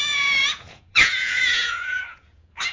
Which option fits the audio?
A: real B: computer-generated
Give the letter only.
B